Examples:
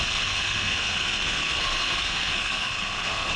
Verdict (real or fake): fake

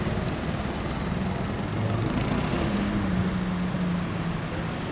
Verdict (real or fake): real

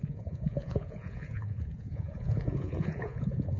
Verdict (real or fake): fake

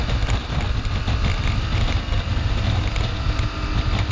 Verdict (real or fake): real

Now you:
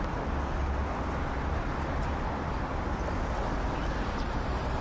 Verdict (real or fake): real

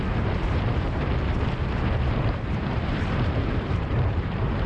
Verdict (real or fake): fake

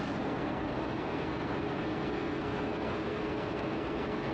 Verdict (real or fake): fake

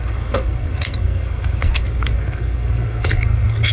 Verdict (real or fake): fake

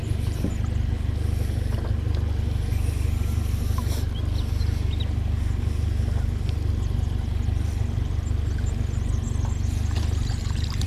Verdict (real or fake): real